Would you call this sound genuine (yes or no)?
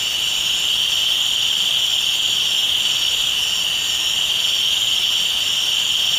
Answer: yes